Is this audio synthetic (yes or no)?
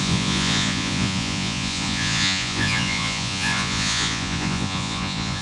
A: yes